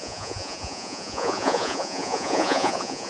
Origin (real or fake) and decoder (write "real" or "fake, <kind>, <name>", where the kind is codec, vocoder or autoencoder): fake, vocoder, Vocos